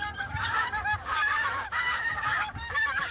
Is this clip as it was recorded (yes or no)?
no